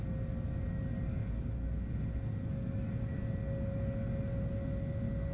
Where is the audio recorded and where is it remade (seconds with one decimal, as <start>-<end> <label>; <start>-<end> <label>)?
0.0-5.3 recorded